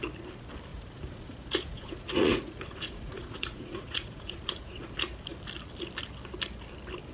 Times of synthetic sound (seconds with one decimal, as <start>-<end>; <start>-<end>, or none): 0.7-4.8

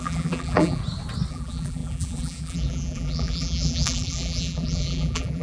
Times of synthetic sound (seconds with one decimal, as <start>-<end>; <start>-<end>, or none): 0.0-0.8; 1.3-5.4

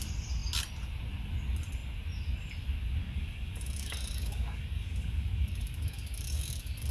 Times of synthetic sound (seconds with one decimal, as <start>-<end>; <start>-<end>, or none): 3.0-6.9